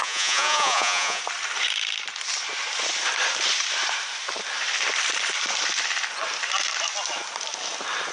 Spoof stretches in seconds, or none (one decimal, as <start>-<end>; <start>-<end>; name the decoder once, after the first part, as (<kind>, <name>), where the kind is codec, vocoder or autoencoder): 0.0-1.2 (vocoder, Vocos)